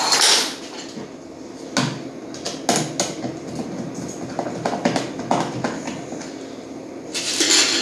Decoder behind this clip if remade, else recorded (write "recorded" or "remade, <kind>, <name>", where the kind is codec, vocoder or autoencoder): recorded